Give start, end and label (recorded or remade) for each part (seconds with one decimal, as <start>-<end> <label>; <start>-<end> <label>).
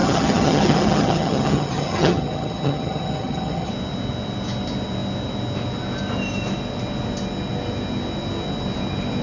0.0-3.7 remade; 3.7-9.2 recorded